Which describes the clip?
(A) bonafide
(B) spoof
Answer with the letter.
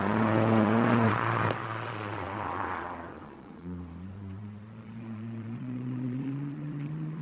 B